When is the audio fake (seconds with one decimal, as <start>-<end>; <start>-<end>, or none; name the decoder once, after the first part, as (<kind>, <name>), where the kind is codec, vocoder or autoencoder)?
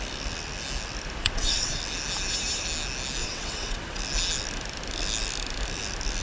1.2-1.8 (vocoder, WaveNeXt); 3.2-4.0